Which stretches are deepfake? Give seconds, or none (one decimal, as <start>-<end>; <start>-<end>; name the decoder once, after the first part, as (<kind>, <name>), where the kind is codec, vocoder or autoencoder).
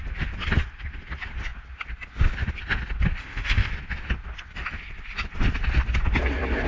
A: 3.2-3.7 (codec, ZipCodec)